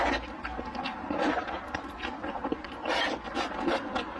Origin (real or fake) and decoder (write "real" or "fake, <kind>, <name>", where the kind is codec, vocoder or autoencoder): real